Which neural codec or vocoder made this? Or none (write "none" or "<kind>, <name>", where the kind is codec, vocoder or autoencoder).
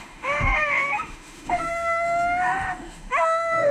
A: autoencoder, DAC-VAE